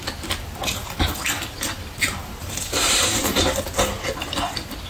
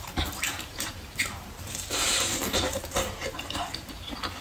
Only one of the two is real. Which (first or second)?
first